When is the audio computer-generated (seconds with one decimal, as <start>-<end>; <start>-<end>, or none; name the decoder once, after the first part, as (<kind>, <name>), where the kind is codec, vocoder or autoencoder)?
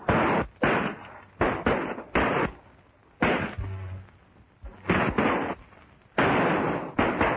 none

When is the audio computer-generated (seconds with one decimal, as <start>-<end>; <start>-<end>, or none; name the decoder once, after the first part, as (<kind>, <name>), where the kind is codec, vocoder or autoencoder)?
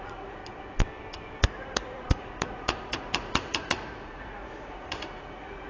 0.0-0.4 (vocoder, Vocos); 1.4-5.7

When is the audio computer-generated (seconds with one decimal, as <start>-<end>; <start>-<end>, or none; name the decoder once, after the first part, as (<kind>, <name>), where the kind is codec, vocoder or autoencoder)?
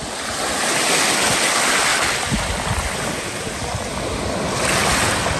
none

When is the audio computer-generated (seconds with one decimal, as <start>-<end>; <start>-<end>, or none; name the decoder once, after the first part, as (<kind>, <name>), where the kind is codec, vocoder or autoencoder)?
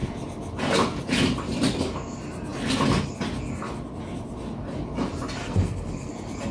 5.4-6.1 (codec, SNAC)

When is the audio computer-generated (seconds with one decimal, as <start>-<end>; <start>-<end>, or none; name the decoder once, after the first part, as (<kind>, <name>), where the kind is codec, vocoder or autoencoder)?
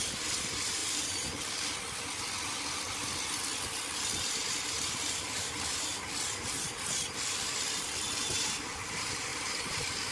0.0-0.8 (vocoder, BigVGAN v2); 4.4-5.9; 8.3-9.3